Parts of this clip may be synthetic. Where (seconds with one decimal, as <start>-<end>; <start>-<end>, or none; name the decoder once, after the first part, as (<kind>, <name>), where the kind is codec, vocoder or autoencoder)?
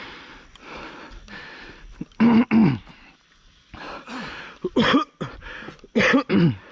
none